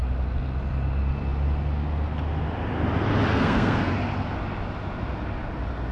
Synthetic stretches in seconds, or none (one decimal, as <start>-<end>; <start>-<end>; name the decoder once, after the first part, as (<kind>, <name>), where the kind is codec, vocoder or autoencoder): 3.3-3.9 (codec, SNAC)